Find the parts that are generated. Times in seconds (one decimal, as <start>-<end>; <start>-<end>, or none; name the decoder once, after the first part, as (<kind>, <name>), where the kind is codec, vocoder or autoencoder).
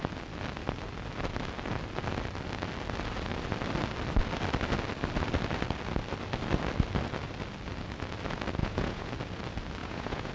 8.6-9.1 (vocoder, Vocos); 9.8-10.3